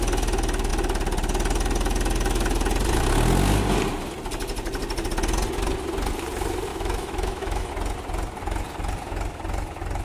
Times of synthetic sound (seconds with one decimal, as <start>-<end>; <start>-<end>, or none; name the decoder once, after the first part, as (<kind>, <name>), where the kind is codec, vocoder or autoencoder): 6.7-7.7 (autoencoder, DAC-VAE)